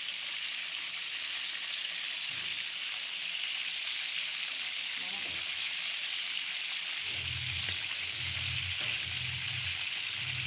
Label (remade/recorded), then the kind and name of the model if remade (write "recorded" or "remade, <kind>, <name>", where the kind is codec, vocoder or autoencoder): recorded